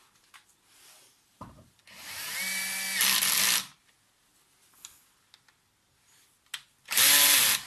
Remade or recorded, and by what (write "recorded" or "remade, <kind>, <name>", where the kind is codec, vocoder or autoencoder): recorded